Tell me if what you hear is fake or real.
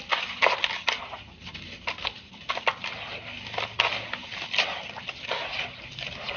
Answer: real